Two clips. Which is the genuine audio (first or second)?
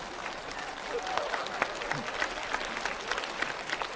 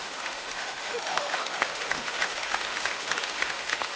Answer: first